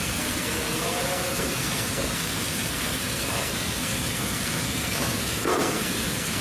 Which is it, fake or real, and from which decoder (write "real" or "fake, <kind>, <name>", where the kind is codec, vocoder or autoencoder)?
fake, codec, SNAC